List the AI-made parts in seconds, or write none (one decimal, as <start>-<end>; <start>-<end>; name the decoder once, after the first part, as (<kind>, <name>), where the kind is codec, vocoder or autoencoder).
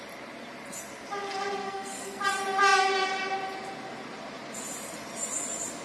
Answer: 1.6-2.2 (codec, SNAC)